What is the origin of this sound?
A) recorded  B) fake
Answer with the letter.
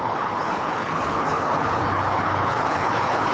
B